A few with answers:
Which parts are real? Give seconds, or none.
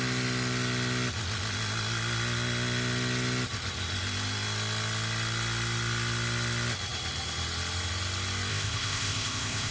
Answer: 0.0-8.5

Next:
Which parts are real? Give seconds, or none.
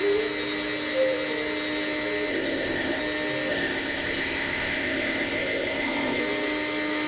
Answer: 0.0-2.3; 3.0-3.5; 6.2-7.1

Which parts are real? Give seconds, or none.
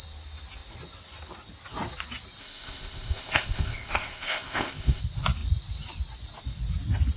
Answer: 0.0-2.4; 5.0-7.2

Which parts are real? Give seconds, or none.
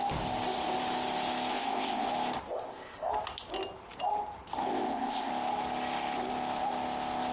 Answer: 0.0-1.5; 2.1-2.5; 3.1-4.7; 5.3-7.3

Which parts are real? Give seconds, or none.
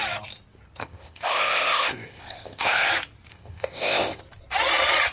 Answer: 0.0-0.8; 2.9-3.3; 4.2-5.1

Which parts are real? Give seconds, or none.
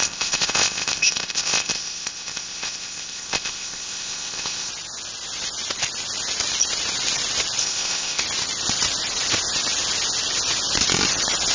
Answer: 4.7-7.6; 8.2-11.5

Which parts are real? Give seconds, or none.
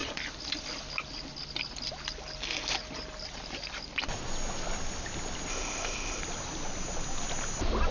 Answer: 0.0-5.5; 6.2-7.9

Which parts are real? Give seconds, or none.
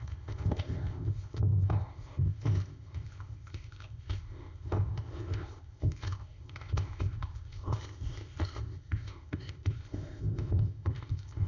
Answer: none